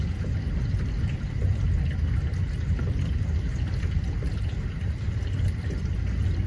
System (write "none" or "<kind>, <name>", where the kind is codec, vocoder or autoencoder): none